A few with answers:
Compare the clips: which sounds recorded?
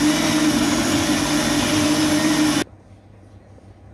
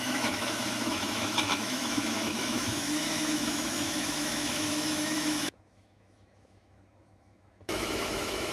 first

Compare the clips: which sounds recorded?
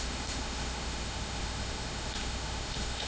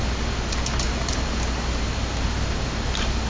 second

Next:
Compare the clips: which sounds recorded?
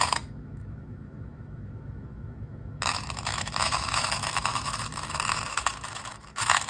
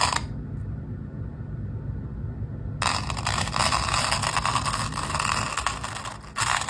second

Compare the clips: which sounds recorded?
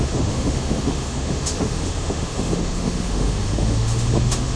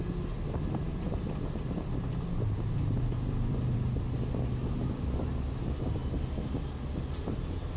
second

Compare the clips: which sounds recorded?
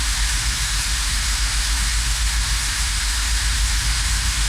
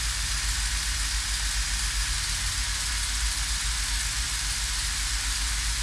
second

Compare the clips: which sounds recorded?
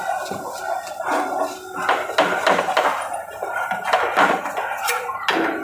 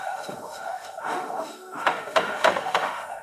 first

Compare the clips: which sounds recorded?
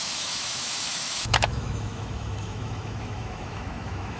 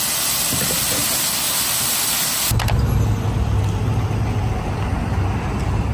second